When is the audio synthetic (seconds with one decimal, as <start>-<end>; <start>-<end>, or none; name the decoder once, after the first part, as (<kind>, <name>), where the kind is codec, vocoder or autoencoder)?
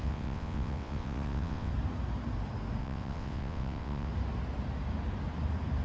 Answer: 0.0-1.7 (vocoder, WaveNeXt); 2.8-4.1